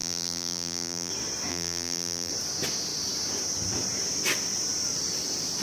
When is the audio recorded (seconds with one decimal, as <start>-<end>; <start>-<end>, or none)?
1.1-1.5; 2.3-5.6